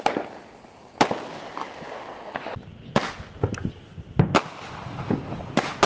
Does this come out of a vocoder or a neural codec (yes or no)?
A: no